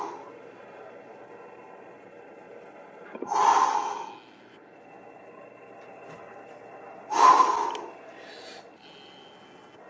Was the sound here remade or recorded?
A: recorded